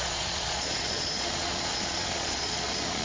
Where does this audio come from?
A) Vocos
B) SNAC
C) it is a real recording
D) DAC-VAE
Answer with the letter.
A